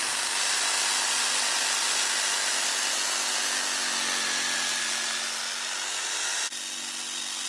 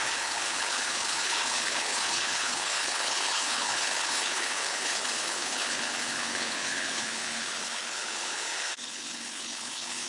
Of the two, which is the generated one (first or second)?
second